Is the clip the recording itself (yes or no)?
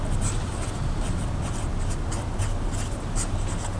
yes